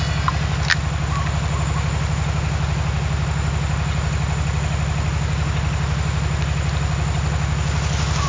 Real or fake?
real